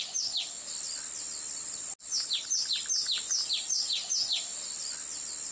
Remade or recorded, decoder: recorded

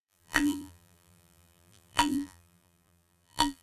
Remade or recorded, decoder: remade, vocoder, BigVGAN v2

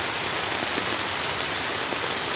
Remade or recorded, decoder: recorded